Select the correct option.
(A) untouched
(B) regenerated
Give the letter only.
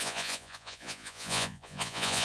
B